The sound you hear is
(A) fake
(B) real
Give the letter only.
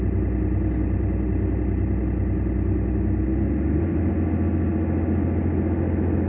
B